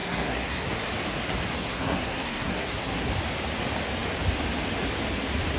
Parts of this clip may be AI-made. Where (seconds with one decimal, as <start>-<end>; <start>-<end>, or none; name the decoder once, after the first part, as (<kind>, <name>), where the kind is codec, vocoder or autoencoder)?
0.0-0.7 (codec, SNAC); 1.6-3.1